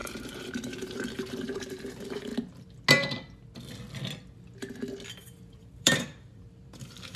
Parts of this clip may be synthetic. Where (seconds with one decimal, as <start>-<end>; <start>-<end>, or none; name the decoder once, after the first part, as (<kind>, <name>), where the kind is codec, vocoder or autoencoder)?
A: 0.0-2.3 (vocoder, BigVGAN v2); 5.1-7.2